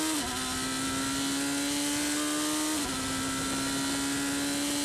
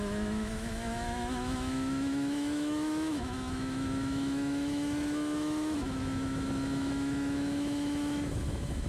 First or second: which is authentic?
first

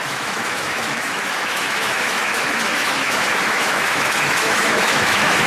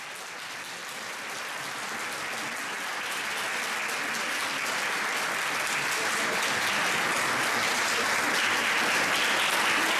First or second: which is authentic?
second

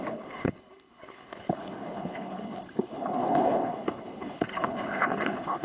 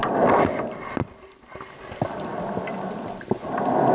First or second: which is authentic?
second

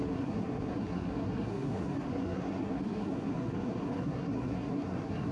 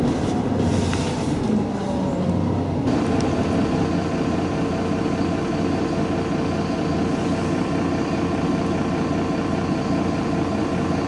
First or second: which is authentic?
second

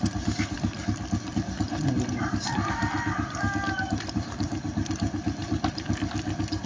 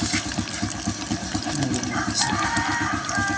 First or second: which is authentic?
second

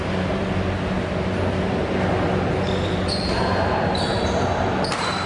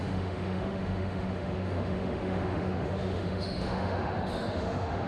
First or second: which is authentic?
first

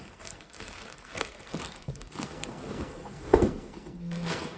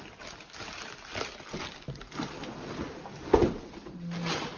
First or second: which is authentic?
second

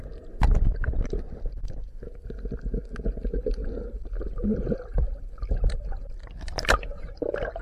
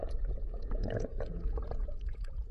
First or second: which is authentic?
first